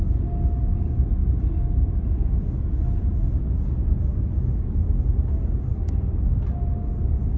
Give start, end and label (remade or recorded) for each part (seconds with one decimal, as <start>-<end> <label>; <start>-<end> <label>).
0.0-7.4 recorded